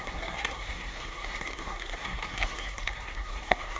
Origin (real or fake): fake